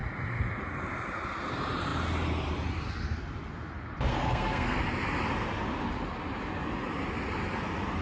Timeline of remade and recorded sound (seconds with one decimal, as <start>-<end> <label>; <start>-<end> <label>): 0.0-4.1 recorded; 4.1-4.8 remade; 4.8-8.0 recorded